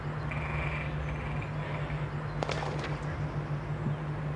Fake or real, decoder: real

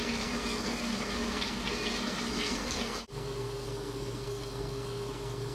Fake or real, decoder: fake, codec, SNAC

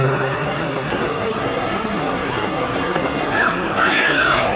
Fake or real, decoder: fake, codec, SNAC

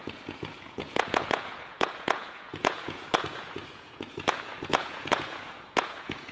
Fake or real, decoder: fake, vocoder, Vocos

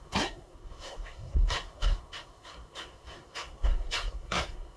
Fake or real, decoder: fake, codec, SNAC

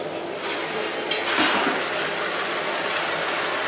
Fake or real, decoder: real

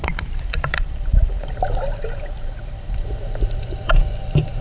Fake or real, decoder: fake, vocoder, BigVGAN v2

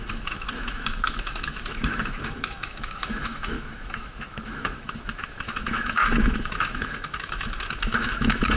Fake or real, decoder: fake, autoencoder, DAC-VAE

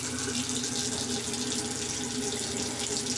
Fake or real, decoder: real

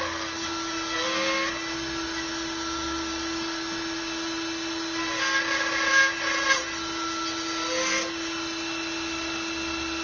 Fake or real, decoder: real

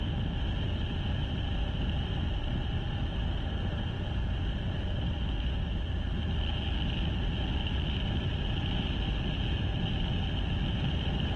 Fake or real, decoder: real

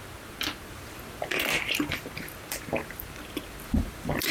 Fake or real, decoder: fake, vocoder, BigVGAN v2